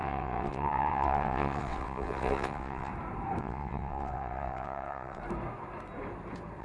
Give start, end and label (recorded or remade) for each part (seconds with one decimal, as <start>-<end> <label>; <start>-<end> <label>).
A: 0.0-2.9 remade; 2.9-3.4 recorded; 3.4-5.2 remade; 5.2-6.6 recorded